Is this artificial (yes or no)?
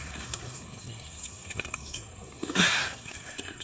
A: yes